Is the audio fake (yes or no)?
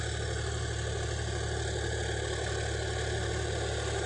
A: no